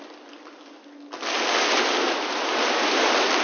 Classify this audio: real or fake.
real